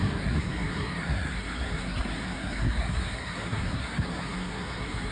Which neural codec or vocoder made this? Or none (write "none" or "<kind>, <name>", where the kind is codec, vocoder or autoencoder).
codec, SNAC